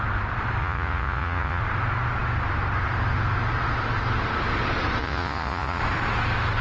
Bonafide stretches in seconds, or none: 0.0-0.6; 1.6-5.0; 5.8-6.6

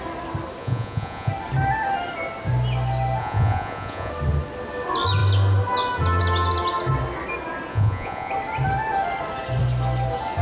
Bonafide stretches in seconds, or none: 0.0-0.6; 1.3-3.2; 4.1-7.7; 8.3-10.4

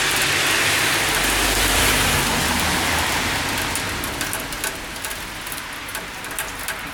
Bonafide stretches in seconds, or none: 0.0-6.9

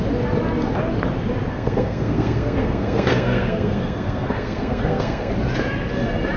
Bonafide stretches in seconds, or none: 0.0-1.5; 5.3-6.4

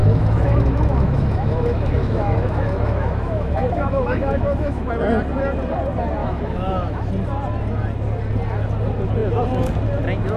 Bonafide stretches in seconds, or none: 4.9-6.2; 7.1-10.4

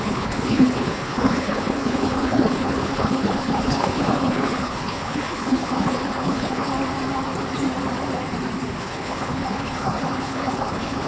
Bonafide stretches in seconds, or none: 6.7-8.8